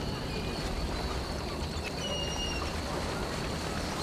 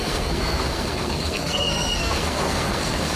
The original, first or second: first